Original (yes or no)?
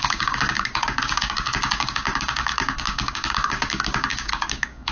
no